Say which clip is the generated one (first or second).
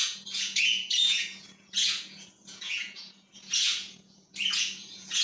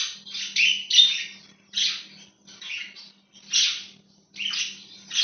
first